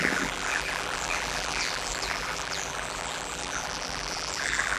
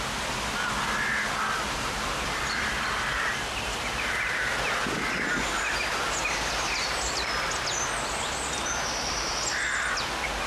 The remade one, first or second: first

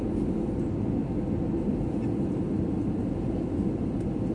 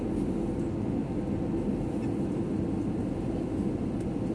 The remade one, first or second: first